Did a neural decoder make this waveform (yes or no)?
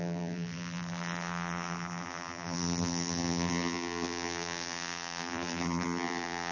yes